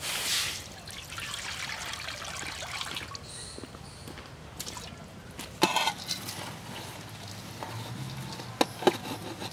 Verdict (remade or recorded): recorded